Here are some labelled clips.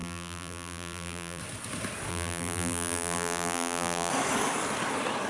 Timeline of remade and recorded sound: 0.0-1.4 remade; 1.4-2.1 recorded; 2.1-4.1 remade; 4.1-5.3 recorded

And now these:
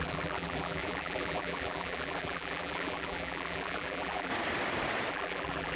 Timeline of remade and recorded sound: 0.0-4.3 remade; 4.3-5.1 recorded; 5.1-5.8 remade

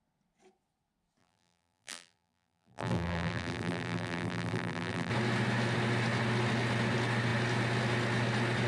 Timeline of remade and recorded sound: 0.0-1.2 recorded; 1.2-5.1 remade; 5.1-8.7 recorded

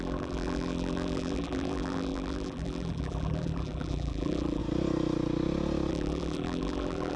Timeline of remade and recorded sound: 0.0-4.6 remade; 4.6-5.9 recorded; 5.9-7.2 remade

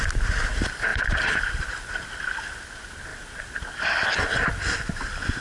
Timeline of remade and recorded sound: 0.0-0.9 recorded; 0.9-2.0 remade; 2.0-3.1 recorded; 3.1-5.0 remade; 5.0-5.4 recorded

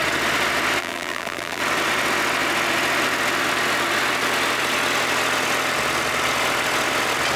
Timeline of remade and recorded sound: 0.0-0.8 recorded; 0.8-1.6 remade; 1.6-7.4 recorded

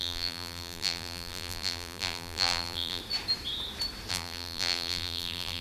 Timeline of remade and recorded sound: 0.0-3.0 remade; 3.0-4.1 recorded; 4.1-5.6 remade

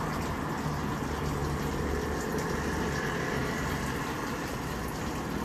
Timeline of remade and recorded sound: 0.0-1.4 recorded; 1.4-2.3 remade; 2.3-3.4 recorded; 3.4-4.2 remade; 4.2-5.4 recorded